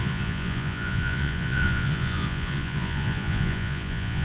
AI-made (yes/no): yes